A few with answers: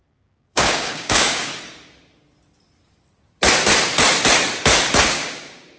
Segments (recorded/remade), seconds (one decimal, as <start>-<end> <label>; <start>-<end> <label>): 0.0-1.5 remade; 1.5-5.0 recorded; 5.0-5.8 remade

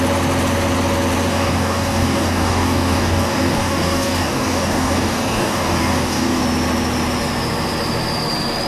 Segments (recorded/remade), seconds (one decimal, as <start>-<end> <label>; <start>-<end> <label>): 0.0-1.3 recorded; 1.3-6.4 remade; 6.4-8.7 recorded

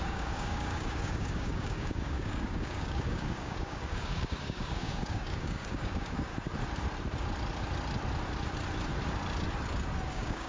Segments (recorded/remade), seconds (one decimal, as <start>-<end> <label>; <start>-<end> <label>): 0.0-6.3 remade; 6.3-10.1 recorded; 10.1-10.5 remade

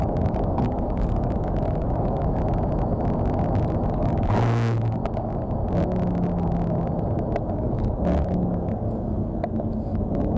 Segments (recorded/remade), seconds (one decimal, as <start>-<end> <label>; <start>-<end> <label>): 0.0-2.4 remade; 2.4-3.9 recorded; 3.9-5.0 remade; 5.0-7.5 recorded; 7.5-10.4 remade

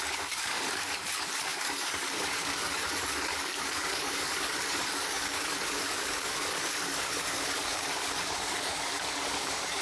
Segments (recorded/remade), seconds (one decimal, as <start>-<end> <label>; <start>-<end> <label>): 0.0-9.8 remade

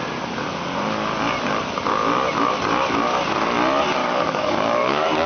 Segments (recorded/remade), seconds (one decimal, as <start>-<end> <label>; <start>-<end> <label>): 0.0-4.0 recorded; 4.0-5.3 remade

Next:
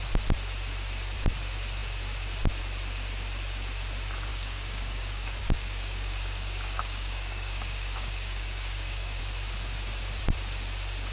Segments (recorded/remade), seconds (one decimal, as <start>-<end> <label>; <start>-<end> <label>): 0.0-4.3 recorded; 4.3-9.2 remade; 9.2-11.1 recorded